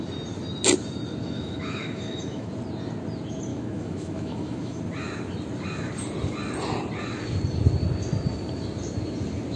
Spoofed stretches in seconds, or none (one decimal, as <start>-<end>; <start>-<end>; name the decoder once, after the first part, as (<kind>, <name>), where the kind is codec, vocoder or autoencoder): 1.2-2.5 (autoencoder, DAC-VAE); 3.5-4.8